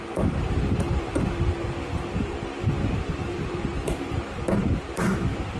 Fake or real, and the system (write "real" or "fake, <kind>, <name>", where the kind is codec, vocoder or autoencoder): fake, vocoder, BigVGAN v2